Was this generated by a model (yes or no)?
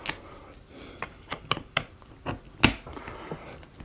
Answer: no